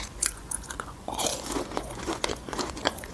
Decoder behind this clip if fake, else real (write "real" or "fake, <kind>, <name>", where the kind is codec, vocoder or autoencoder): fake, vocoder, Vocos